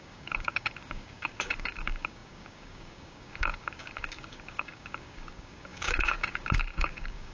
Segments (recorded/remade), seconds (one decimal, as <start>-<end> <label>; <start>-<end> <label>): 0.0-7.3 remade